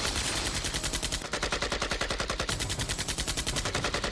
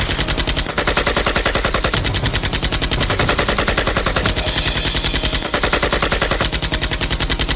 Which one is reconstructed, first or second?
first